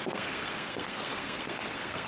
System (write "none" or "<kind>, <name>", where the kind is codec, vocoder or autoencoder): codec, SNAC